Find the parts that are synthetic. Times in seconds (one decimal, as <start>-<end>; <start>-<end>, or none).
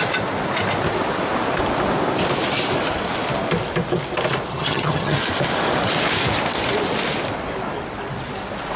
4.5-5.2